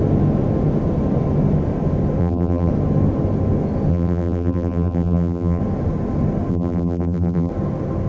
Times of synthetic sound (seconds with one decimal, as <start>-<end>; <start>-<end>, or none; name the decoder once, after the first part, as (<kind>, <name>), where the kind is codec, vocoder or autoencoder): 2.2-2.7 (vocoder, BigVGAN v2); 3.9-5.6; 6.5-7.5